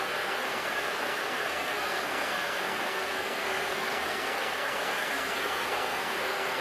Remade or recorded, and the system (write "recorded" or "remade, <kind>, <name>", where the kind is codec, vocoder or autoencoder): remade, codec, SNAC